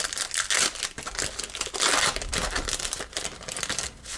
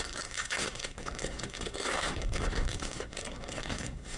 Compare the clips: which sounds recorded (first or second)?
first